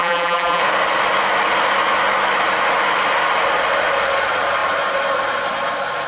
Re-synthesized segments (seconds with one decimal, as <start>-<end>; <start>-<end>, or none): 0.0-0.6